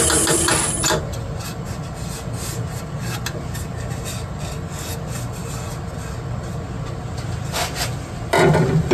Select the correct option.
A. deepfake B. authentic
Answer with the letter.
B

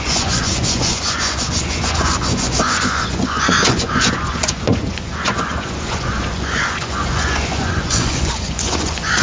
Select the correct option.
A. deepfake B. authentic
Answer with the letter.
A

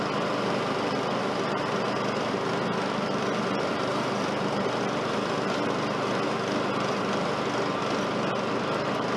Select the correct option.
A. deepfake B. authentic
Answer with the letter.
B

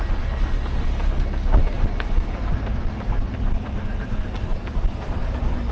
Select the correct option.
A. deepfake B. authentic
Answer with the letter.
B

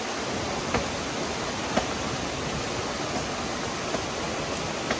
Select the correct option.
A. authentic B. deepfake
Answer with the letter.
A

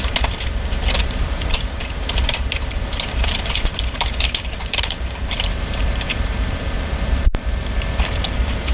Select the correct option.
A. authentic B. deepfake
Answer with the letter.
B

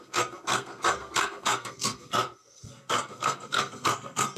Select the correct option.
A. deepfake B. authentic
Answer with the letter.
A